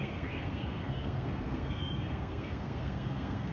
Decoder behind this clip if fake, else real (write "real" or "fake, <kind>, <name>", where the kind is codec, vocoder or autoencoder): fake, codec, SNAC